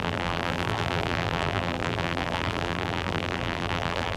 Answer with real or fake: fake